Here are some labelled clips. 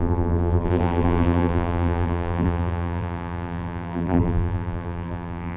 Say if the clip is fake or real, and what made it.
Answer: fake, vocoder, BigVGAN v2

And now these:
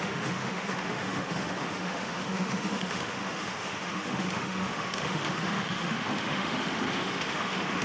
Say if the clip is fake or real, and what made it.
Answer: fake, autoencoder, DAC-VAE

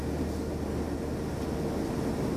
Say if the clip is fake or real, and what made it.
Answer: real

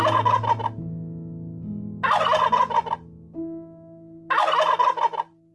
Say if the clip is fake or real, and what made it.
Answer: real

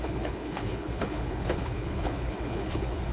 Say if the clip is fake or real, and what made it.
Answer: fake, codec, HILCodec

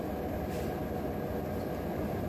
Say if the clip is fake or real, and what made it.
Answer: real